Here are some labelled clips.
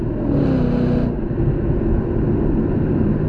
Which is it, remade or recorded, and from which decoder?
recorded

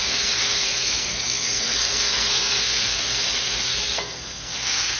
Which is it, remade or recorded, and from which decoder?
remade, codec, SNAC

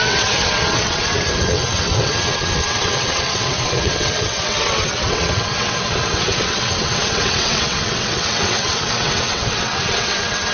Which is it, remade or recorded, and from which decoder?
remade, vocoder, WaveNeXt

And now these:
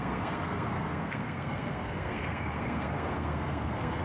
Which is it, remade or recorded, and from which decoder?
remade, codec, SNAC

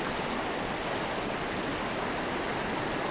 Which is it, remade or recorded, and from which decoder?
recorded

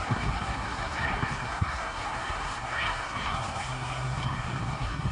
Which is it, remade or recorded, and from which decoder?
remade, codec, SNAC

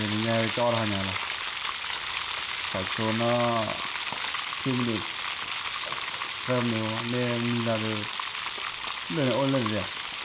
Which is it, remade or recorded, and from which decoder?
recorded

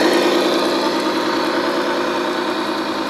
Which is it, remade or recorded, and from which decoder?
recorded